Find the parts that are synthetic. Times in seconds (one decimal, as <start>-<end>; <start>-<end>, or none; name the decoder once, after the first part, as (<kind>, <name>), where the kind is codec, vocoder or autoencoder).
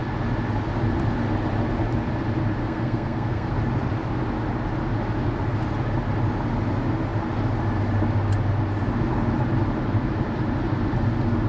2.6-3.5 (codec, SNAC)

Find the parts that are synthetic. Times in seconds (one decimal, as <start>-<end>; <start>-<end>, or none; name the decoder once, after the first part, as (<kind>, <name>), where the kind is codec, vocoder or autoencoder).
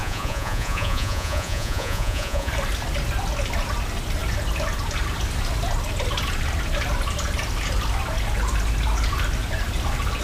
0.0-2.5 (vocoder, Vocos)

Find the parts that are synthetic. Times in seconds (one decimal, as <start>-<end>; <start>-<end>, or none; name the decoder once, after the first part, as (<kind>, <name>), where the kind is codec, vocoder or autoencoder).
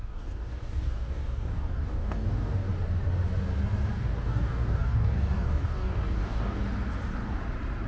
0.0-2.7 (codec, DAC); 3.9-6.6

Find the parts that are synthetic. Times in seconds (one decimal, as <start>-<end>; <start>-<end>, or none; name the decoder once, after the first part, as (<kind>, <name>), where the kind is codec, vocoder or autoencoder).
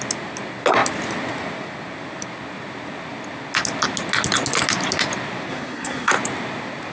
5.5-6.1 (codec, SNAC)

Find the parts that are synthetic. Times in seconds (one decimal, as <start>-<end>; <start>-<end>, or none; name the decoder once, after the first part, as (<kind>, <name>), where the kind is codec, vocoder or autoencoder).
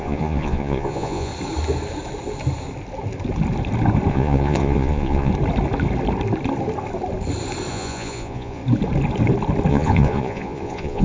0.0-1.3 (vocoder, Vocos); 4.1-5.3; 7.7-8.6; 9.7-11.0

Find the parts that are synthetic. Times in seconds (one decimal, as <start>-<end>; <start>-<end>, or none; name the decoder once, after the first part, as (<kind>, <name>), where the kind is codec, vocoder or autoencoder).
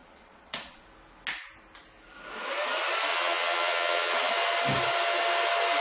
0.0-0.8 (vocoder, Vocos); 3.1-4.3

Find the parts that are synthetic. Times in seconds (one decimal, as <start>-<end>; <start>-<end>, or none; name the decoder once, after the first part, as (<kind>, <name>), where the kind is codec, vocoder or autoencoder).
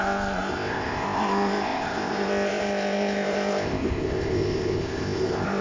0.0-5.6 (codec, ZipCodec)